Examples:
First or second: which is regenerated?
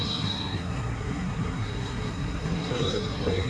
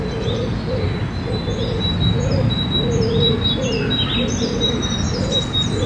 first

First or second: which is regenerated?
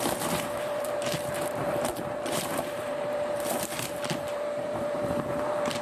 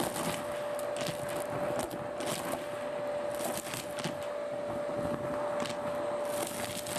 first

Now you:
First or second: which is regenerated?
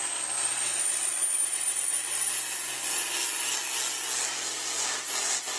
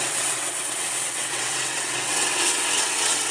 second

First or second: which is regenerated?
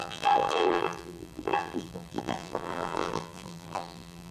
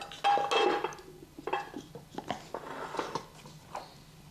first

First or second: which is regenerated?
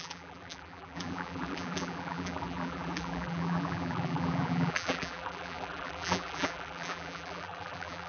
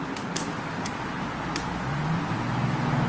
first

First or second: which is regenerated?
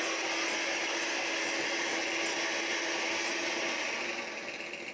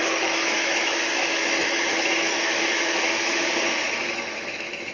second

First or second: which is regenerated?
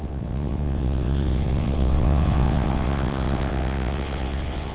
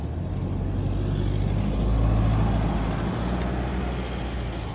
first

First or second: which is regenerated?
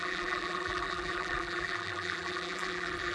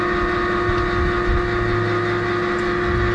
first